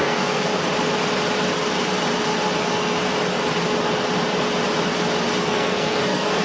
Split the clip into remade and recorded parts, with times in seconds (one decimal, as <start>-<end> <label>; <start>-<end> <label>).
0.0-0.5 remade; 0.5-2.6 recorded; 2.6-3.0 remade; 3.0-5.4 recorded; 5.4-6.4 remade